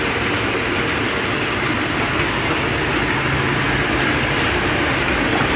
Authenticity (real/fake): real